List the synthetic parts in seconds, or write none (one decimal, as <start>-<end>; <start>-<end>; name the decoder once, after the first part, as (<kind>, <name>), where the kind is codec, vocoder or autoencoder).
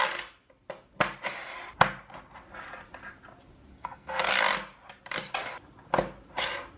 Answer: 3.7-4.3 (codec, SNAC)